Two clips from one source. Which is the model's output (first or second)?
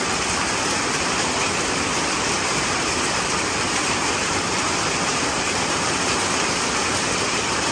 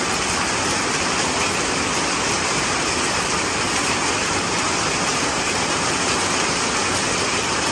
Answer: first